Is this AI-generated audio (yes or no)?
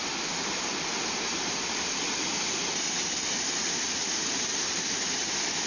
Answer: no